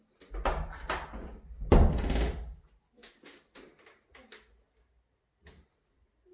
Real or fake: real